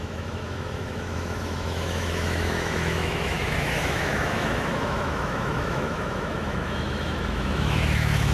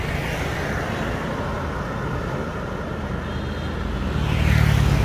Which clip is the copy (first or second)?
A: first